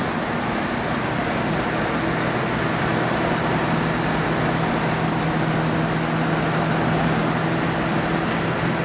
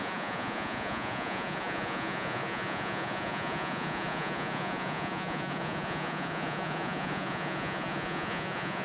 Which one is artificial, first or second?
second